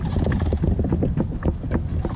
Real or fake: real